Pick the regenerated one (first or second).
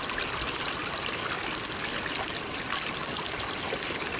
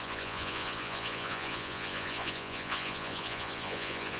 second